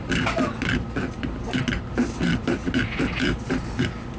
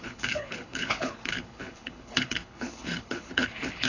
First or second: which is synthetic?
second